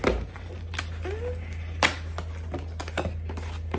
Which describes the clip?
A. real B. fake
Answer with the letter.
A